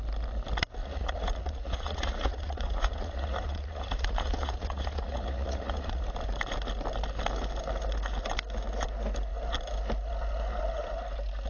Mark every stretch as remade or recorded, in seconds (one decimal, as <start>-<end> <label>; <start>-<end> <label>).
0.0-0.8 recorded; 0.8-6.0 remade; 6.0-11.5 recorded